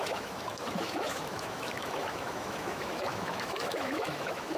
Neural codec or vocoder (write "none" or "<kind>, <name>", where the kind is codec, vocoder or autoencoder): autoencoder, DAC-VAE